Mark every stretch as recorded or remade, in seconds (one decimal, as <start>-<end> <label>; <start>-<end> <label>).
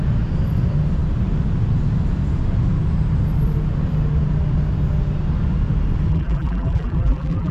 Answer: 0.0-6.1 recorded; 6.1-7.5 remade